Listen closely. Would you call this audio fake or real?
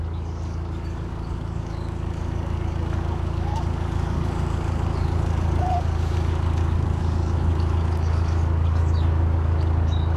fake